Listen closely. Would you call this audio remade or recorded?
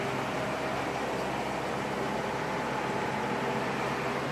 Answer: remade